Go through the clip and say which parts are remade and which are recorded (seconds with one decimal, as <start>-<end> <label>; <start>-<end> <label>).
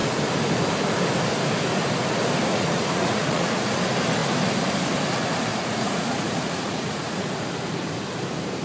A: 0.0-2.5 recorded; 2.5-3.8 remade; 3.8-5.5 recorded; 5.5-7.3 remade; 7.3-8.6 recorded